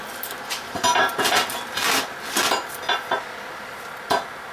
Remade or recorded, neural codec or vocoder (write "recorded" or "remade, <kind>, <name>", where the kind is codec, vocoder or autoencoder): recorded